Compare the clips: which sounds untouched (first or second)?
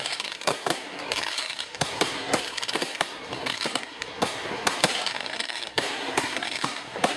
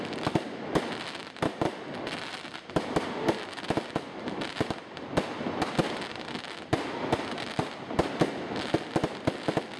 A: second